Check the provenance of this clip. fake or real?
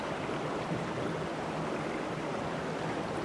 real